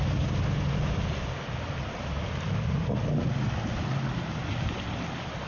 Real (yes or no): yes